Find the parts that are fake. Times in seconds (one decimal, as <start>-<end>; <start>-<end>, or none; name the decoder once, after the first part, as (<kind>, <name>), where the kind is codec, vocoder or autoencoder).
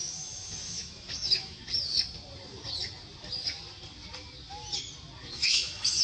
0.0-1.6 (autoencoder, DAC-VAE); 5.2-6.0